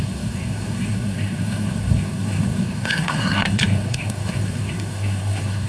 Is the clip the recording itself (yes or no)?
no